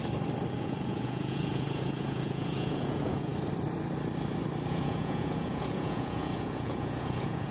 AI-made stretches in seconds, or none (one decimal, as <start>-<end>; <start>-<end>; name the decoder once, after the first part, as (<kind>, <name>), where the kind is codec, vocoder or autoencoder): 0.5-3.3 (vocoder, Vocos); 4.7-7.5